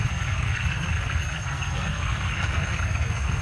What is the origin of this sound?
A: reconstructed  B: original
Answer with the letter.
A